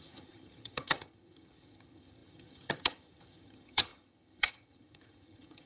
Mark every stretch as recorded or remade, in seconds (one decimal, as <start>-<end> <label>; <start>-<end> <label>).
0.0-5.7 remade